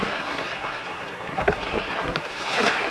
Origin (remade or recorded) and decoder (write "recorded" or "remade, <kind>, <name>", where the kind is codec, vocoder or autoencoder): remade, codec, SNAC